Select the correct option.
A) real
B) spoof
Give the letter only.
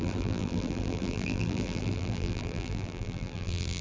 B